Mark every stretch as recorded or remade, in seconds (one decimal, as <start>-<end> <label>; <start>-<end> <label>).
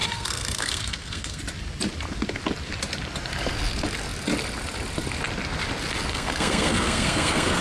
0.0-1.4 remade; 1.4-6.1 recorded; 6.1-7.6 remade